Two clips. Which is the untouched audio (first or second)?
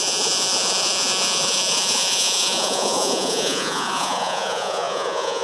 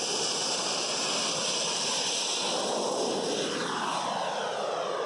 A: second